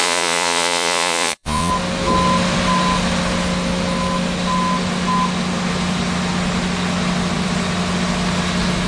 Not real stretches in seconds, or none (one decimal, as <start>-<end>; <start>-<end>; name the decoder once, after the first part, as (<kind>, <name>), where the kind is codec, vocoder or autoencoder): 0.0-1.7 (vocoder, Vocos)